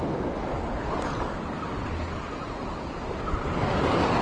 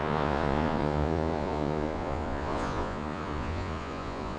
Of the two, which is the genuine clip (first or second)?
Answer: first